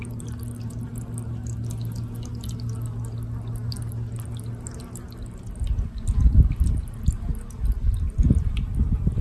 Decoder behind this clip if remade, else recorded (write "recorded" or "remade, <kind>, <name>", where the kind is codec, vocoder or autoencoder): recorded